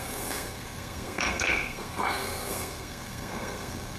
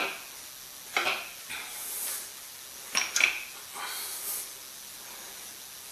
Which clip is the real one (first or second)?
second